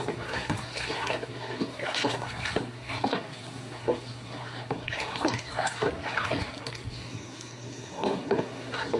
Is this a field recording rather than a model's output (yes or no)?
no